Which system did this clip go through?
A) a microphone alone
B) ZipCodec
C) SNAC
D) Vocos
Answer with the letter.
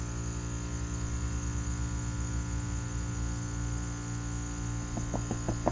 A